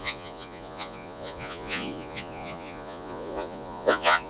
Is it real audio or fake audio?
fake